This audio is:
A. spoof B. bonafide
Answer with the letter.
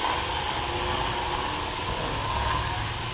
B